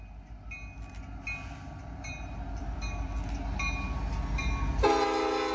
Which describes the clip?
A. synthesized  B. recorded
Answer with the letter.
B